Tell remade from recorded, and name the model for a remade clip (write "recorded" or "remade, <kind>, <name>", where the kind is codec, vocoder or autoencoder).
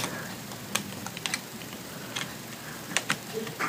remade, vocoder, BigVGAN v2